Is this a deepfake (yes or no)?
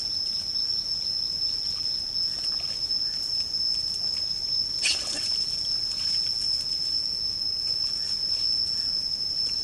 no